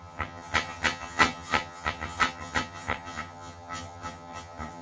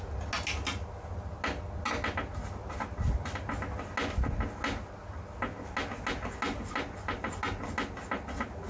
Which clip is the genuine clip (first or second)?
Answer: second